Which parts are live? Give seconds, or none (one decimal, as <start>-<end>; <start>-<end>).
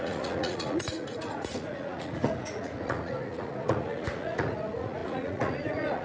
none